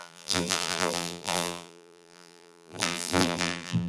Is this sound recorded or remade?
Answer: remade